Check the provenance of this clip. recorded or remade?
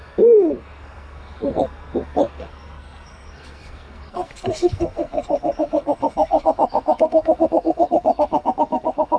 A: remade